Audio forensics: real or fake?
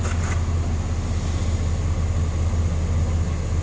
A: real